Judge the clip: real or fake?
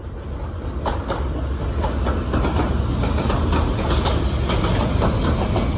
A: real